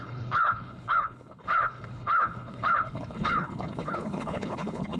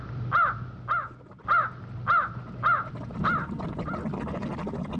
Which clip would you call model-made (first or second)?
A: first